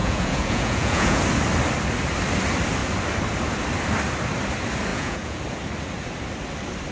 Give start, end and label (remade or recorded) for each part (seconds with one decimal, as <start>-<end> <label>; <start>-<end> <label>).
0.0-1.2 remade; 1.2-4.9 recorded; 4.9-5.4 remade; 5.4-6.9 recorded